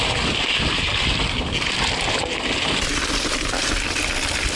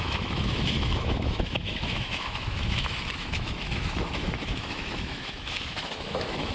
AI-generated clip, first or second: second